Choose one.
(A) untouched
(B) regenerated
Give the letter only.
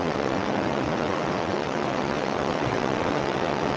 B